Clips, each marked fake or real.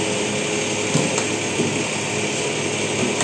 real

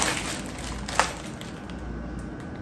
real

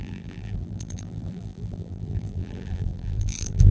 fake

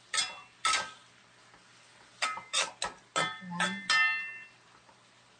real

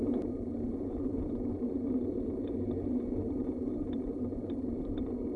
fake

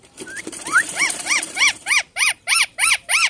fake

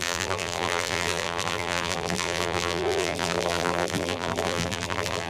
fake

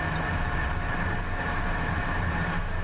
fake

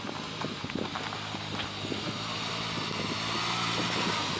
real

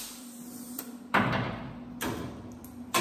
fake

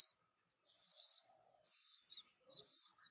fake